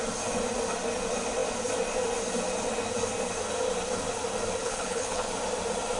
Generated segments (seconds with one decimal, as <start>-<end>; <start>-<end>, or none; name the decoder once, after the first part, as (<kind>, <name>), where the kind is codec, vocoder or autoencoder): 4.6-5.3 (codec, HILCodec)

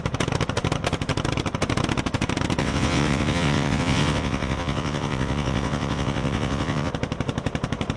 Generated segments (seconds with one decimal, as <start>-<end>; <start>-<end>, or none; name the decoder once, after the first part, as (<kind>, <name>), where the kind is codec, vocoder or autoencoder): 2.6-6.9 (vocoder, WaveNeXt)

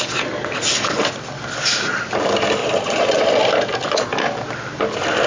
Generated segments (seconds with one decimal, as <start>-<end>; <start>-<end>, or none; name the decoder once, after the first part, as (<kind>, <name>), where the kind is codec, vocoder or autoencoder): 2.6-3.3 (vocoder, Vocos)

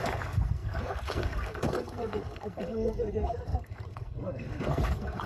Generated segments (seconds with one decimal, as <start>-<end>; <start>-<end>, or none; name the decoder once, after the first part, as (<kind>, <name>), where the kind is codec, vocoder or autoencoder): 0.0-5.3 (codec, SNAC)

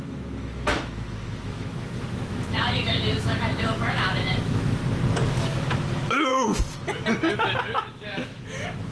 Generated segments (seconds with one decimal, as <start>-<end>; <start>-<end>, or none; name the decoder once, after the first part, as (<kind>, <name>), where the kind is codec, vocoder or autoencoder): 0.0-4.8 (autoencoder, DAC-VAE); 5.3-6.3; 7.6-8.9